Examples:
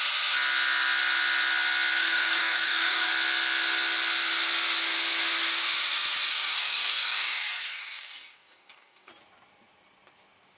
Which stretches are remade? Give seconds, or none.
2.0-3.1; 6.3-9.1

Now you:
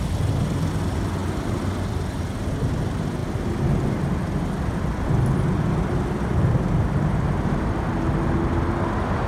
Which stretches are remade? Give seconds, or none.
none

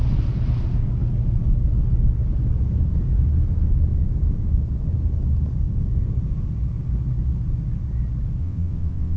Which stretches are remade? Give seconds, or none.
8.4-9.2